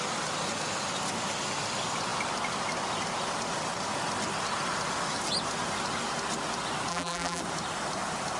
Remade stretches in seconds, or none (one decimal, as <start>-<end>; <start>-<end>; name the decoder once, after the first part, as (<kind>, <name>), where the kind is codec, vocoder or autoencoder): 6.9-7.4 (vocoder, BigVGAN v2)